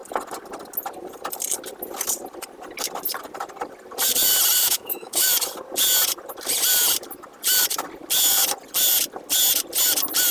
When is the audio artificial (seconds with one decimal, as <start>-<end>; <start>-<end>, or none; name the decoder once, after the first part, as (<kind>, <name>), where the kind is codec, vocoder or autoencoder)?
4.6-5.3 (autoencoder, DAC-VAE)